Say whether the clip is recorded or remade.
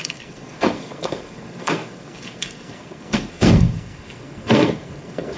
remade